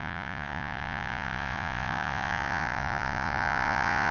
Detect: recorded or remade remade